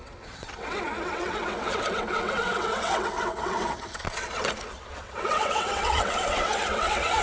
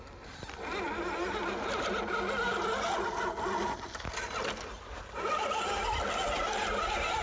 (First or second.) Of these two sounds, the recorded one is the second